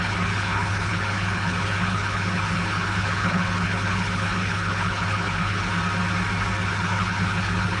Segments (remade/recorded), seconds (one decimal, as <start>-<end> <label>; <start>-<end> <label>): 0.0-5.7 remade; 5.7-6.6 recorded; 6.6-7.8 remade

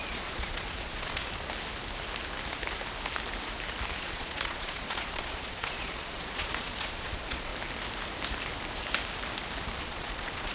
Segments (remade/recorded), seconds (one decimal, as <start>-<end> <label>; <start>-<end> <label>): 0.0-1.2 remade; 1.2-4.0 recorded; 4.0-7.5 remade; 7.5-9.8 recorded; 9.8-10.5 remade

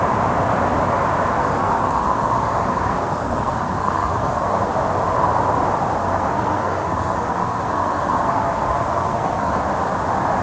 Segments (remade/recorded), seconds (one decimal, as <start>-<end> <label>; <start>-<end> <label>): 0.0-1.4 recorded; 1.4-4.7 remade; 4.7-6.0 recorded; 6.0-9.6 remade; 9.6-10.4 recorded

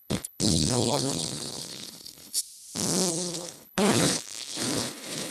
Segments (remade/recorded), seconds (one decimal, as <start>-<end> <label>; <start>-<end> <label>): 0.0-2.4 remade; 2.4-3.1 recorded; 3.1-5.3 remade